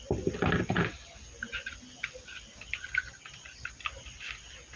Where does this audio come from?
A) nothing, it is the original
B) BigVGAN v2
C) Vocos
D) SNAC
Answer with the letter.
A